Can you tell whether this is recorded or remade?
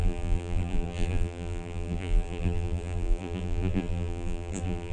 remade